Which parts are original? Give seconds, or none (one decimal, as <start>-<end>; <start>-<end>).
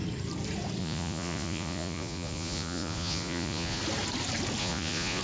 0.0-0.8; 3.8-4.6